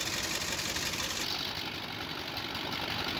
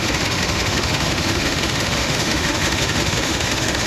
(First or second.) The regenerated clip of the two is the second